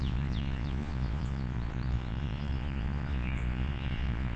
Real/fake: fake